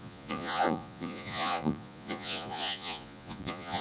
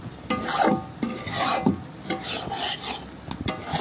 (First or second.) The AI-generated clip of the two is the first